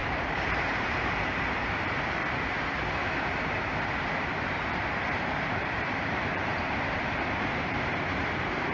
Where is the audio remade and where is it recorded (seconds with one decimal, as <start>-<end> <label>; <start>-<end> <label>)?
0.0-2.2 remade; 2.2-3.8 recorded; 3.8-8.7 remade

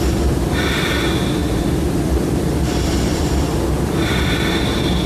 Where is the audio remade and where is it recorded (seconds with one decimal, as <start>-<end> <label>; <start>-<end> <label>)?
0.0-1.4 recorded; 1.4-4.5 remade; 4.5-5.1 recorded